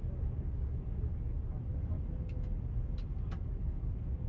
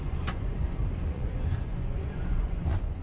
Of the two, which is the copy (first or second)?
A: second